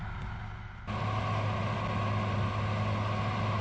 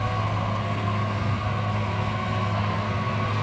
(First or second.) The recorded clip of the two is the first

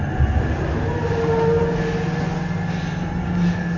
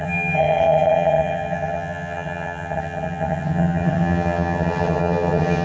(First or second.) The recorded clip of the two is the first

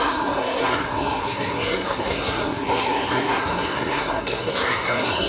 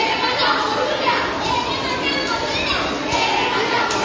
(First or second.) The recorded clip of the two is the second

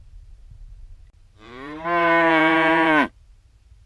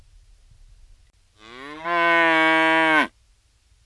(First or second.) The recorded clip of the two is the second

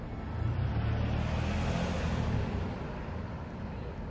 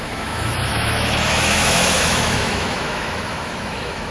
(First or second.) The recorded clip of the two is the first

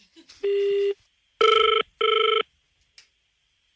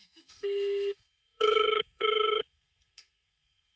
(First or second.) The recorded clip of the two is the first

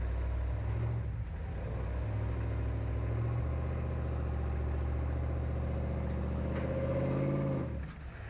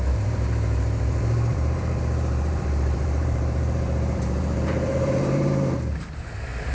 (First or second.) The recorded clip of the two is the first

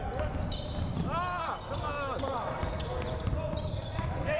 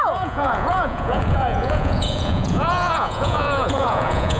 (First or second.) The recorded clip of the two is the first